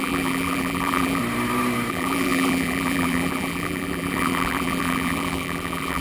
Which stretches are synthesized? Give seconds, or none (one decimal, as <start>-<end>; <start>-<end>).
0.0-1.2; 1.9-6.0